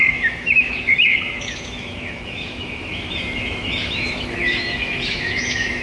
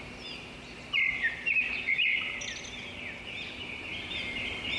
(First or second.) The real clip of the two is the second